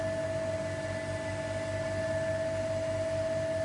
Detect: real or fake real